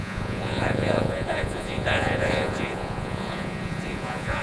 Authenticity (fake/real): fake